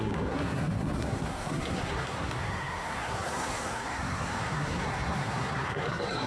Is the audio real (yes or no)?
no